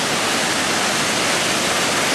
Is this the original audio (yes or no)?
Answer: yes